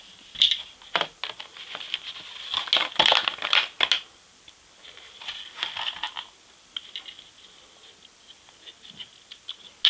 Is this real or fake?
real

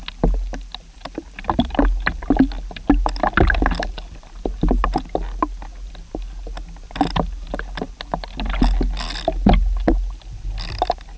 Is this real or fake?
real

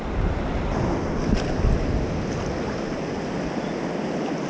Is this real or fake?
real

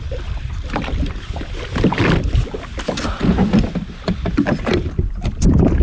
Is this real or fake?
real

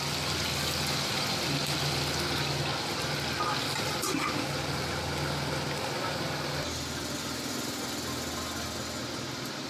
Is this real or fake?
real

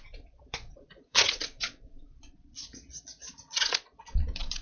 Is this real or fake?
fake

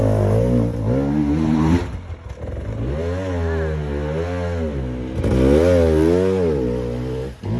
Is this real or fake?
real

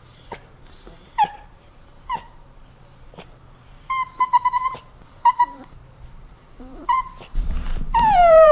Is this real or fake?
fake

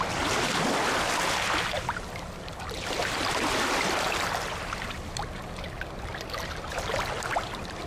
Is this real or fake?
real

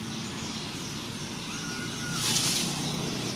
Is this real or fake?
real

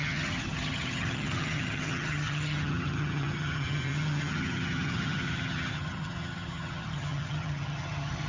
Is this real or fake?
fake